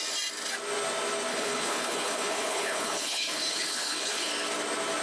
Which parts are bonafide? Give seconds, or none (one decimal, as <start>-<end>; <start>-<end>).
0.0-1.3; 4.3-5.0